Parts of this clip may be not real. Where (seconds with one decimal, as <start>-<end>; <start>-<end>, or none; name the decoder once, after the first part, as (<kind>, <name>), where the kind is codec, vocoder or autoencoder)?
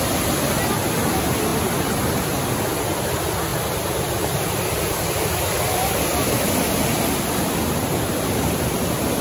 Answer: 3.5-8.4 (vocoder, BigVGAN v2)